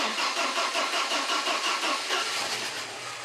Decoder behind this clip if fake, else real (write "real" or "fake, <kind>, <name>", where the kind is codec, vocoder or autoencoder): fake, vocoder, BigVGAN v2